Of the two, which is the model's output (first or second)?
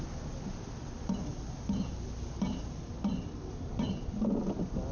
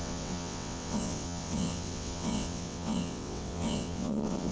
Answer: second